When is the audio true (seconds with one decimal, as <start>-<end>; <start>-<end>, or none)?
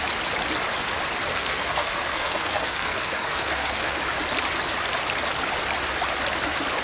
0.0-1.3; 4.0-6.8